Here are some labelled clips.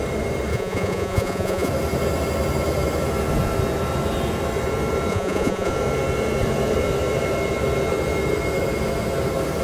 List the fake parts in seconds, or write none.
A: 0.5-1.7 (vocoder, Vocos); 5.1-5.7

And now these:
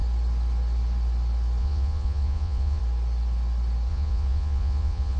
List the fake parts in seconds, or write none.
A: 1.6-2.8 (vocoder, Vocos); 3.9-5.2